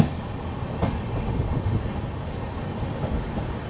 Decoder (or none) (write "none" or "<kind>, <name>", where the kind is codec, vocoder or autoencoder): none